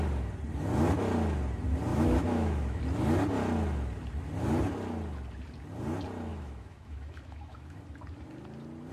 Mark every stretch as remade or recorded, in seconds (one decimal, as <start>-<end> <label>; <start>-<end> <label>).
0.0-1.9 recorded; 1.9-2.8 remade; 2.8-6.3 recorded; 6.3-7.8 remade; 7.8-8.9 recorded